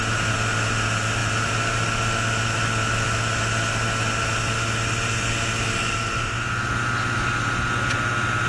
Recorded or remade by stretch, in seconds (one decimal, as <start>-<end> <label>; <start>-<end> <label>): 0.0-8.5 recorded